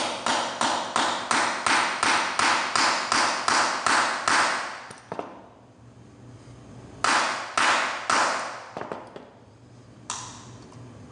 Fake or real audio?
real